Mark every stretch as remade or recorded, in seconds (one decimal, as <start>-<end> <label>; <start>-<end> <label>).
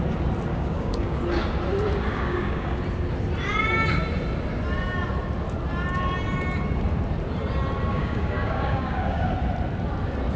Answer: 0.0-0.5 recorded; 0.5-1.2 remade; 1.2-2.1 recorded; 2.1-2.8 remade; 2.8-7.9 recorded; 7.9-9.3 remade; 9.3-10.4 recorded